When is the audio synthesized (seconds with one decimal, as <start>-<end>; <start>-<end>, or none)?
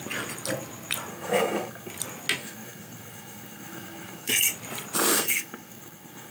1.1-1.9; 2.4-4.3; 5.1-6.3